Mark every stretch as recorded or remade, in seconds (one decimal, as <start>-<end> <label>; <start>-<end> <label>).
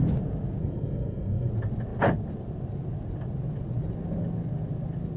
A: 0.0-0.6 recorded; 0.6-1.5 remade; 1.5-5.2 recorded